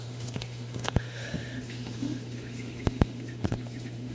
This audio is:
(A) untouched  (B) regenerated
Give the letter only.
B